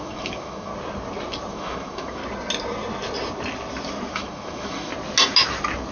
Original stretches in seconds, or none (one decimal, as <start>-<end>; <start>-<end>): 0.7-1.5; 2.2-4.1; 4.9-5.9